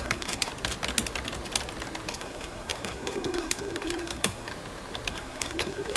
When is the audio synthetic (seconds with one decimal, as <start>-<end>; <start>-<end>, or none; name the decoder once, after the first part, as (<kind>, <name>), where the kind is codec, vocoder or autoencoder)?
0.0-0.5 (codec, SNAC); 2.1-4.5; 5.1-6.0